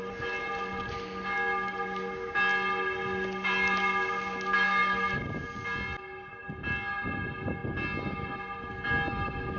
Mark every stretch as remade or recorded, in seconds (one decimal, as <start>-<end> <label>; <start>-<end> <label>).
0.0-9.6 recorded